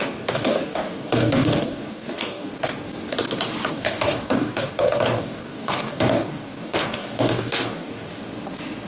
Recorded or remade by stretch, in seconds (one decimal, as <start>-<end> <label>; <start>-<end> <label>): 0.0-2.5 remade; 2.5-3.7 recorded; 3.7-8.2 remade; 8.2-8.9 recorded